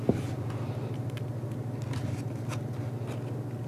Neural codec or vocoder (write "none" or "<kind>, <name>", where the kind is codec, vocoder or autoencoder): none